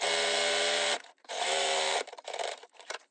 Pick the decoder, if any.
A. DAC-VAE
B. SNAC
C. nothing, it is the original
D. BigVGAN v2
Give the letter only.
D